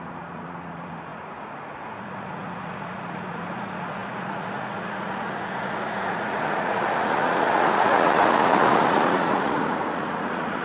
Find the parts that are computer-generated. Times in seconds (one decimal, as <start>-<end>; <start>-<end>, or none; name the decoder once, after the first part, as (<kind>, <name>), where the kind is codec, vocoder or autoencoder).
0.0-10.6 (vocoder, Vocos)